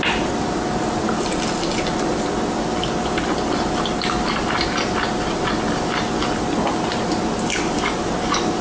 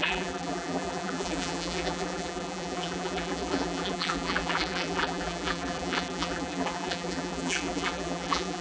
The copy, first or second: second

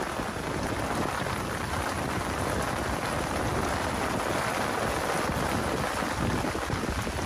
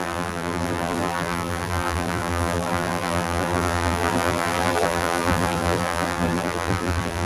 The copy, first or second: second